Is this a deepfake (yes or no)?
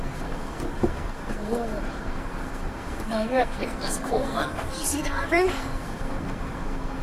yes